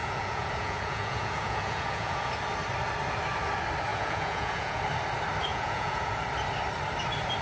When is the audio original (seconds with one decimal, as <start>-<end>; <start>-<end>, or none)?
2.3-3.9; 4.8-5.5; 6.2-7.4